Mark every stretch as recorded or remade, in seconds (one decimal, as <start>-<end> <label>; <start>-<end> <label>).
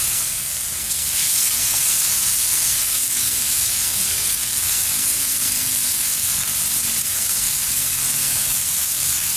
0.0-6.5 remade; 6.5-7.0 recorded; 7.0-9.4 remade